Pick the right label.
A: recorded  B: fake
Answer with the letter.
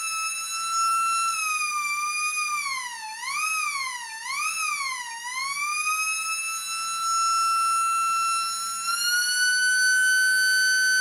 A